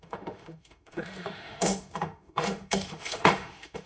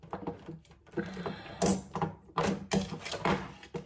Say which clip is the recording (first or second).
second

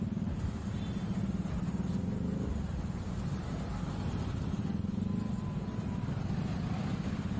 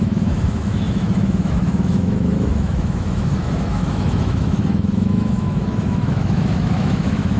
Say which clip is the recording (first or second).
first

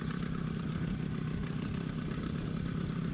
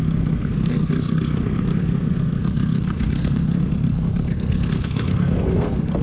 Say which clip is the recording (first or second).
first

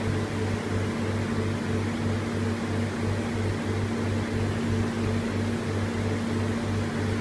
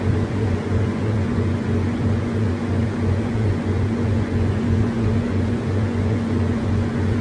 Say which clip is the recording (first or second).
first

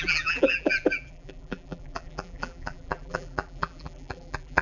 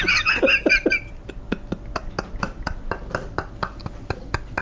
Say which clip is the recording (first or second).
second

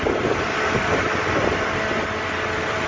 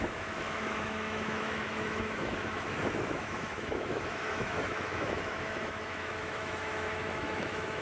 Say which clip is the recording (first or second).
first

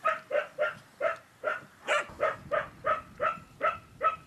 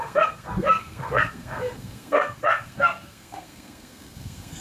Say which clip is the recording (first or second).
first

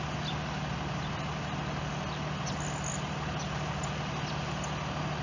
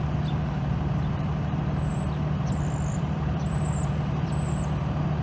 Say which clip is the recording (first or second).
first